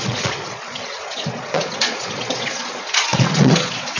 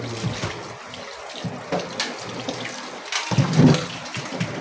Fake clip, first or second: first